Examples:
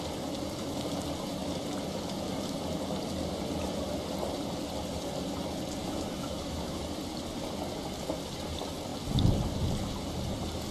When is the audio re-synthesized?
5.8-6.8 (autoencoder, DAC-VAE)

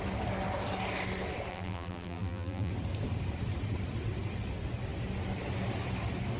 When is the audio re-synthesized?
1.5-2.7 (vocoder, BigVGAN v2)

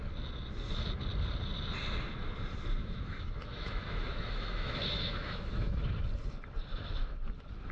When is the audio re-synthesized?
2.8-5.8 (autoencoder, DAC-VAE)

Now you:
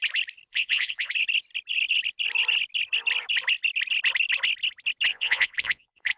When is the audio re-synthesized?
0.5-1.1 (vocoder, Vocos); 5.1-6.2

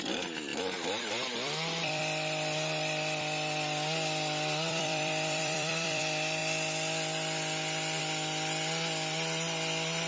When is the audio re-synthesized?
0.5-2.0 (vocoder, BigVGAN v2); 4.7-6.0

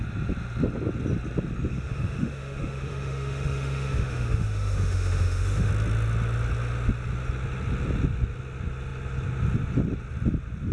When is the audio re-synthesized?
1.7-5.7 (autoencoder, DAC-VAE)